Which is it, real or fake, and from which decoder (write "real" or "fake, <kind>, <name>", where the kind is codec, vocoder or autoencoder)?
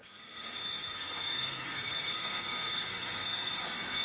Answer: fake, codec, SNAC